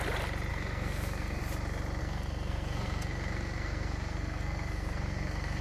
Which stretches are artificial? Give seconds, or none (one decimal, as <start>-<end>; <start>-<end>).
0.5-1.4; 2.0-5.6